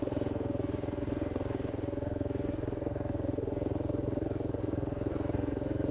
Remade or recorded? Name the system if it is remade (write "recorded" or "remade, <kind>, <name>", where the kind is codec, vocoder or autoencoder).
remade, codec, SNAC